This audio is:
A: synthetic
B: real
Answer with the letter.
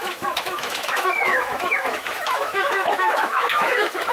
A